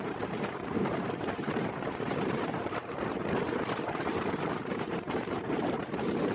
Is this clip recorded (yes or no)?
no